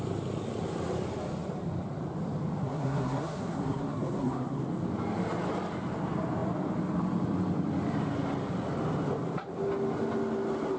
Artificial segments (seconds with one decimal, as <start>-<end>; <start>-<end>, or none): 2.6-4.6